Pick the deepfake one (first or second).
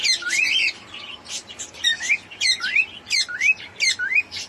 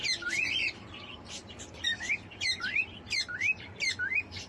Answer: second